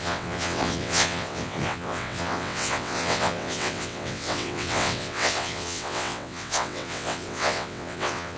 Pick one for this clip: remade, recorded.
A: remade